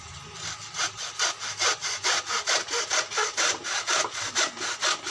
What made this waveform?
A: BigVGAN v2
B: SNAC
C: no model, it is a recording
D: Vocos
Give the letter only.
C